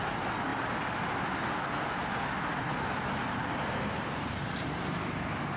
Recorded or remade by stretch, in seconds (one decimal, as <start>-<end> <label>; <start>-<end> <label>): 0.0-5.6 recorded